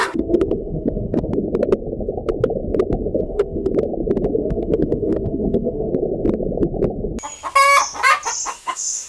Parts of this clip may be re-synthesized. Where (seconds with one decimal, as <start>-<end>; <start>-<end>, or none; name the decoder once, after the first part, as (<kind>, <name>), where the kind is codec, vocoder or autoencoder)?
0.0-1.3 (autoencoder, DAC-VAE); 3.2-3.7; 4.4-5.9; 8.5-9.1

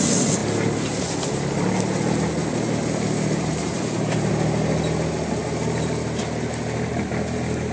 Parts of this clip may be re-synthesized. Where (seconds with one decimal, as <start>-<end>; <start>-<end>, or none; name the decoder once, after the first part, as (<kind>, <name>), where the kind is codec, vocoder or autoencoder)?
2.4-4.3 (vocoder, BigVGAN v2)

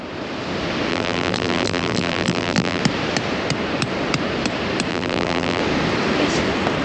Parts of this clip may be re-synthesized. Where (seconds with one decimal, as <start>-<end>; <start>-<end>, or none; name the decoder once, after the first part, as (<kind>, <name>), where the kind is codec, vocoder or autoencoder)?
0.9-2.8 (vocoder, BigVGAN v2); 4.9-5.6

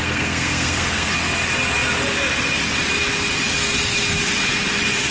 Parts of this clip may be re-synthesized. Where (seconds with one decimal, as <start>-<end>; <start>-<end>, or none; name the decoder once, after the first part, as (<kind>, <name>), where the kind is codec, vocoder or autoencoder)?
0.0-1.1 (codec, SNAC)

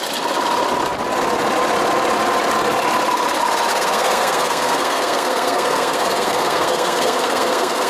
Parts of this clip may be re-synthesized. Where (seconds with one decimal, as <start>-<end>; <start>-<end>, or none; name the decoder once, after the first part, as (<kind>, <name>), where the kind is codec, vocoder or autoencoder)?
3.7-7.9 (codec, SNAC)